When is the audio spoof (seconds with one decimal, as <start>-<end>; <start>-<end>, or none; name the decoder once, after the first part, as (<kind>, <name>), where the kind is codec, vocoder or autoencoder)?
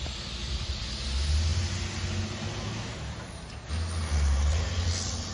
none